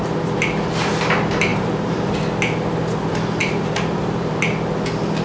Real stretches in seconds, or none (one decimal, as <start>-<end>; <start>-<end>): 0.0-1.5; 2.1-3.4; 4.3-5.2